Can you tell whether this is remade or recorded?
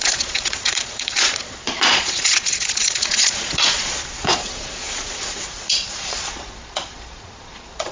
remade